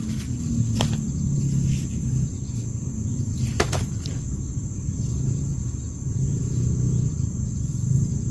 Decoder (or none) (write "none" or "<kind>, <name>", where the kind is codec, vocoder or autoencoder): none